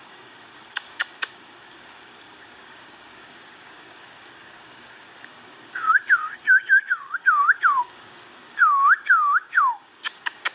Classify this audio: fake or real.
fake